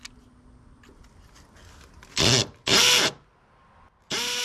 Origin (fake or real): real